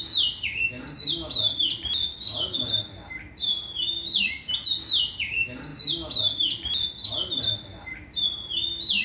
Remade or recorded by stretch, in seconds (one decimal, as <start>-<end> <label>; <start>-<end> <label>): 0.0-2.1 recorded; 2.1-2.9 remade; 2.9-3.4 recorded; 3.4-4.3 remade; 4.3-9.0 recorded